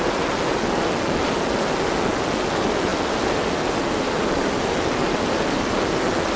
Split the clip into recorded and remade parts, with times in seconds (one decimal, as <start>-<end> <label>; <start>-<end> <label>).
0.0-6.4 recorded